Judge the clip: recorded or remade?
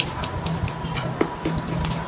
recorded